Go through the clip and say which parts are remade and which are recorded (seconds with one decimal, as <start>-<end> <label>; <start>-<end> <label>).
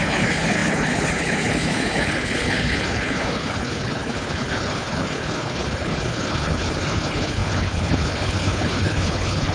0.0-9.5 remade